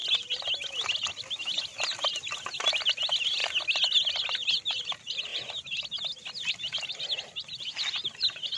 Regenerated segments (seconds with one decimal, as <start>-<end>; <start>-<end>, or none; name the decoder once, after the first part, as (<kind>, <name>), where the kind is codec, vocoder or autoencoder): 0.7-1.7 (vocoder, BigVGAN v2); 2.6-3.4; 4.1-5.3; 6.3-8.6